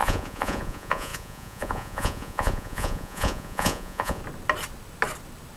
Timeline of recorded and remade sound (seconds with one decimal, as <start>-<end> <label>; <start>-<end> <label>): 0.0-4.2 remade; 4.2-5.6 recorded